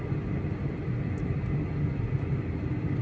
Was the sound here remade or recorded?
recorded